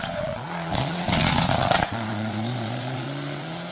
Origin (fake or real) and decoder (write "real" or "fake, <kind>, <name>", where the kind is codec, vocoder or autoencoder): fake, vocoder, Vocos